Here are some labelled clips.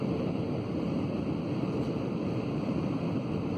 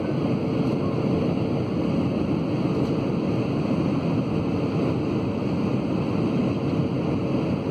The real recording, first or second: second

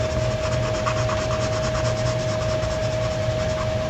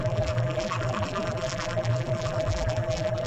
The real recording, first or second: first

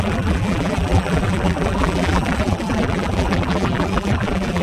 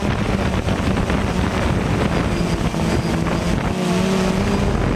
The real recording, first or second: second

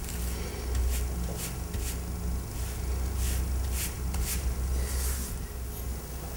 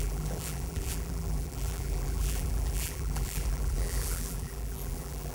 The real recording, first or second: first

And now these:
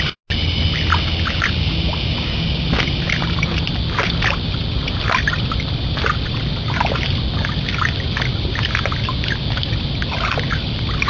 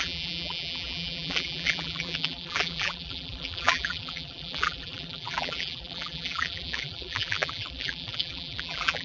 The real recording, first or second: first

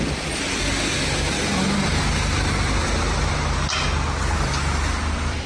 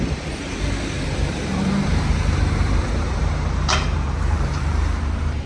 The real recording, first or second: first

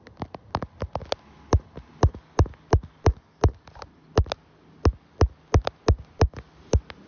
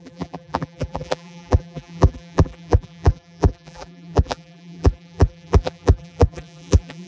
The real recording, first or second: first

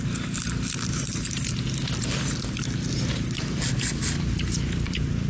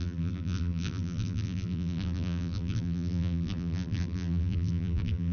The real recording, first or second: first